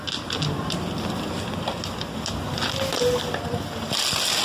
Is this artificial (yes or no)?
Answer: no